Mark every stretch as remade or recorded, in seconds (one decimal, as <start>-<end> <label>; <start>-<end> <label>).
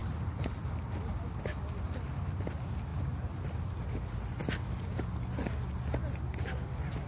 0.0-1.1 remade; 1.1-7.1 recorded